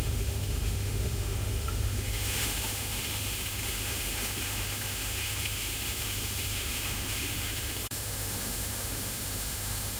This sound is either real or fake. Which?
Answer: fake